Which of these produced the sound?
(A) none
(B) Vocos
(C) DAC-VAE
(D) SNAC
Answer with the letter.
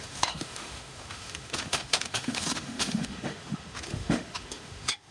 C